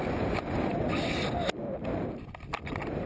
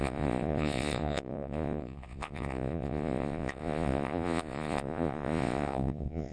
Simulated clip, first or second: second